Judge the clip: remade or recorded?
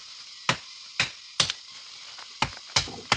recorded